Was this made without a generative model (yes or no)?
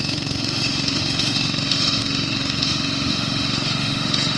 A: no